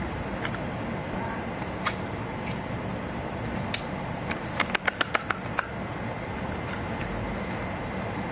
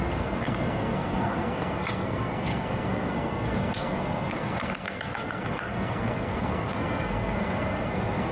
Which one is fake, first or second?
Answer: second